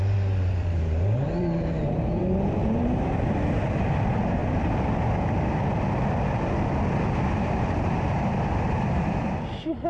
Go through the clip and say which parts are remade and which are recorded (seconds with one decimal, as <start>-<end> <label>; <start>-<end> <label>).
0.0-4.4 remade; 4.4-6.9 recorded; 6.9-9.9 remade